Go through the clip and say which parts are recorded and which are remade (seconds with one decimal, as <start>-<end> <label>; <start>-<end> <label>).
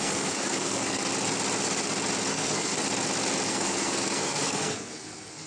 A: 0.0-1.1 remade; 1.1-2.3 recorded; 2.3-2.7 remade; 2.7-3.5 recorded; 3.5-5.5 remade